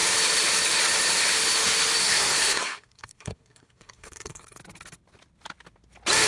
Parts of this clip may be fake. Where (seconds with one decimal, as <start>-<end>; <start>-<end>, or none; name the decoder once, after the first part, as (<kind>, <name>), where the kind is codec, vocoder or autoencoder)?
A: 2.0-4.6 (codec, SNAC)